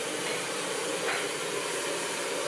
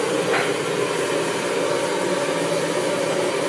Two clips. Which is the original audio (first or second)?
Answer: second